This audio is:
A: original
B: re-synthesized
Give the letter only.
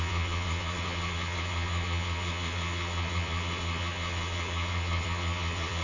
B